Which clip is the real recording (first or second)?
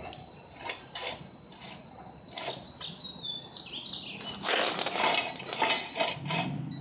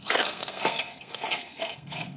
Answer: first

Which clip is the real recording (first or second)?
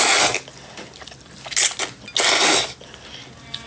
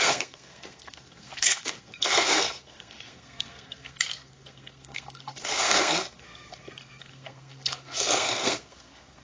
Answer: first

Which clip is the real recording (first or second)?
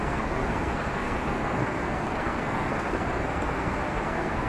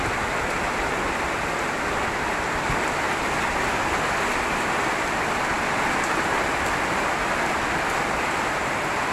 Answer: second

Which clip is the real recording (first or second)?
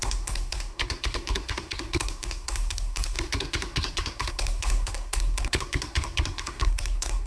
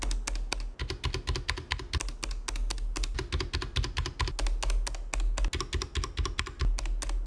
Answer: second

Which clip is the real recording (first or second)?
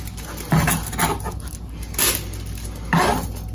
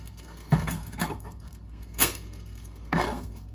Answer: first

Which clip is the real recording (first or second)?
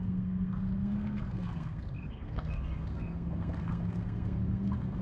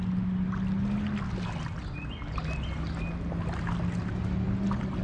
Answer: second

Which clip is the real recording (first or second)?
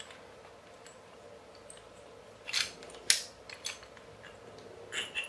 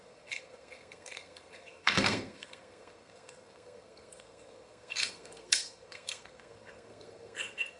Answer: first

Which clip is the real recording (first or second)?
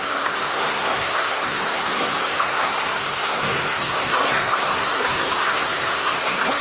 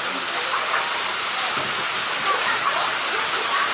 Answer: second